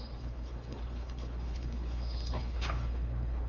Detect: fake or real fake